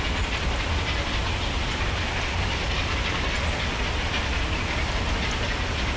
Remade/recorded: recorded